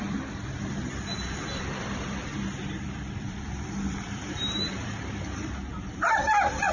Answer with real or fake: fake